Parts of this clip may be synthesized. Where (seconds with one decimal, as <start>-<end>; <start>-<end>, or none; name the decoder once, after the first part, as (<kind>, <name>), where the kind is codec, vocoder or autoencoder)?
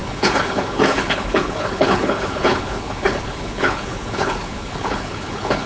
0.0-5.7 (codec, HILCodec)